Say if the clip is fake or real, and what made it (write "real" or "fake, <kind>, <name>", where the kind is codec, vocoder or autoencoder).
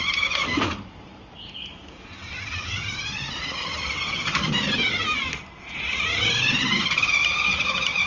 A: real